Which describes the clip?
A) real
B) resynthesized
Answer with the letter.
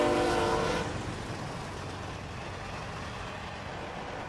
A